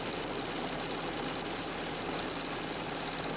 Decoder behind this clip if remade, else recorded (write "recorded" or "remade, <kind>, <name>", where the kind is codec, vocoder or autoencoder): recorded